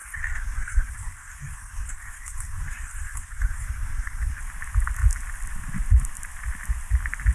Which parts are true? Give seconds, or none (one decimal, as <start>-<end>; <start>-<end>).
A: 4.4-7.3